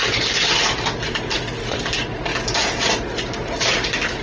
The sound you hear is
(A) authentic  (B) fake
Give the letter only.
A